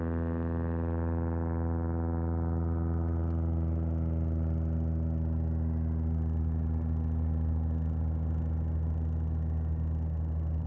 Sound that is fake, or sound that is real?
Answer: real